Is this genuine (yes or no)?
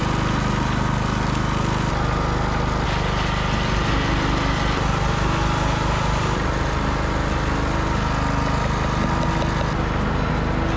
yes